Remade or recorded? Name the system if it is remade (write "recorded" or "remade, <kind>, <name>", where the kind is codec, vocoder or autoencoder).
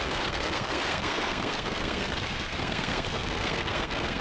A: remade, codec, SNAC